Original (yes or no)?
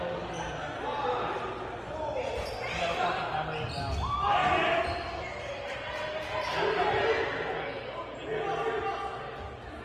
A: yes